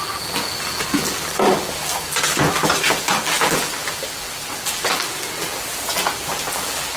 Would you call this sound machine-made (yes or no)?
yes